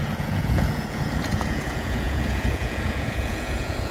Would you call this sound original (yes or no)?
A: no